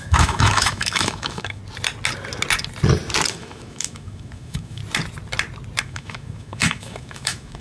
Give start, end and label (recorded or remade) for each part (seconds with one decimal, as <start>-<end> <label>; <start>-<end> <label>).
0.0-1.6 remade; 1.6-3.3 recorded; 3.3-4.8 remade; 4.8-5.8 recorded; 5.8-7.6 remade